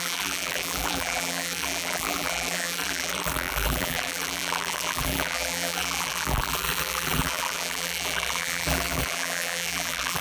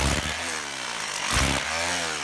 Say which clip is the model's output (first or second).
first